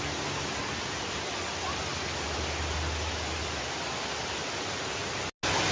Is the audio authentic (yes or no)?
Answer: yes